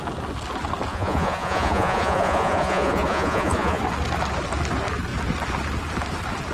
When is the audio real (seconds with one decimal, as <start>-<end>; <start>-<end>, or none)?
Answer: 0.0-0.9; 3.8-6.5